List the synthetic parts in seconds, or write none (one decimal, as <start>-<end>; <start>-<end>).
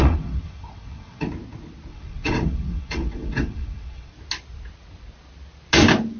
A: 0.0-1.3; 1.9-4.1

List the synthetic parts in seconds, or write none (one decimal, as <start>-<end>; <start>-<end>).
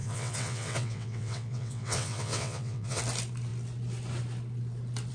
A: 0.0-3.0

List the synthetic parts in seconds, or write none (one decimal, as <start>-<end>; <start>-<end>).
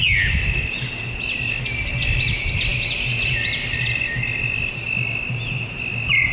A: none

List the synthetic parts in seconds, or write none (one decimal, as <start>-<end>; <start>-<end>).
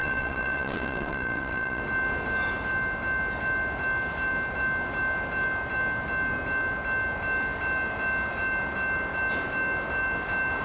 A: 0.0-1.8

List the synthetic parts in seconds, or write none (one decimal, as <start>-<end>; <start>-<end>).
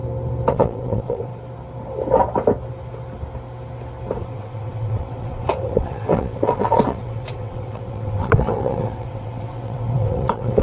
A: 0.5-1.3; 4.2-10.6